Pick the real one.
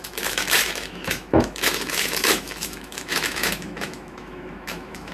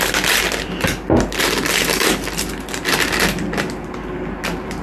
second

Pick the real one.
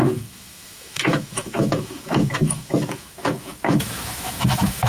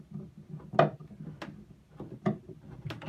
second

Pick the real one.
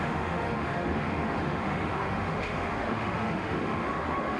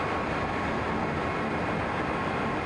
second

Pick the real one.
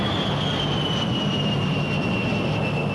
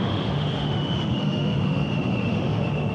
first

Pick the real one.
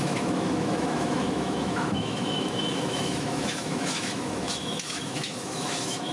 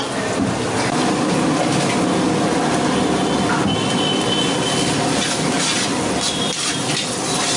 second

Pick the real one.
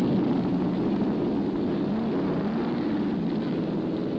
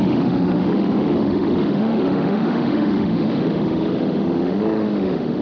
first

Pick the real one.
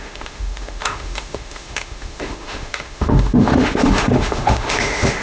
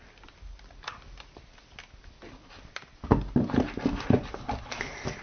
second